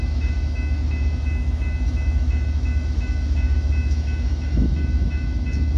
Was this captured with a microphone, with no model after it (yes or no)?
no